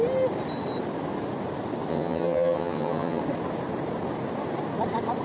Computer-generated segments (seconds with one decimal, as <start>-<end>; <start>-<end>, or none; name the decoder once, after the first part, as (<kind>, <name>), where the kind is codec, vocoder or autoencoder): 1.9-3.2 (vocoder, HiFi-GAN)